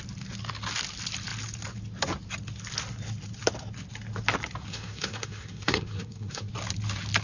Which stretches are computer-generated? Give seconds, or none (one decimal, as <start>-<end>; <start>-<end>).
4.7-6.5